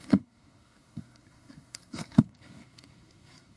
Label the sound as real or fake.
fake